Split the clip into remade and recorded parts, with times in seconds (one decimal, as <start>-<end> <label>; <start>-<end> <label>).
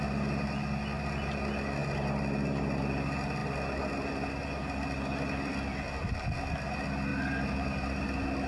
0.0-7.1 recorded; 7.1-8.0 remade; 8.0-8.5 recorded